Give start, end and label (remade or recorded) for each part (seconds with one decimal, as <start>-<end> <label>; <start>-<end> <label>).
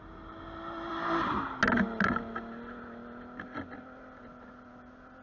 0.0-5.2 recorded